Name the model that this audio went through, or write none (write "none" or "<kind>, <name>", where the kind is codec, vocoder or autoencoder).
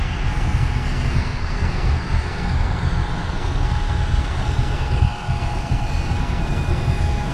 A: codec, SNAC